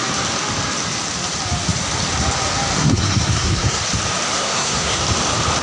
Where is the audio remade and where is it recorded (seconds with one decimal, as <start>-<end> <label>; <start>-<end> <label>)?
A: 0.0-2.8 recorded; 2.8-3.8 remade; 3.8-4.3 recorded; 4.3-5.0 remade; 5.0-5.6 recorded